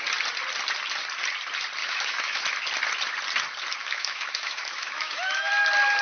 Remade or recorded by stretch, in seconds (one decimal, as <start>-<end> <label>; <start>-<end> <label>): 0.0-1.8 recorded; 1.8-2.4 remade; 2.4-3.8 recorded; 3.8-5.5 remade; 5.5-6.0 recorded